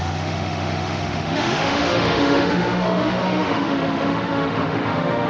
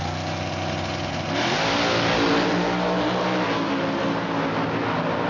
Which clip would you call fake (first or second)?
first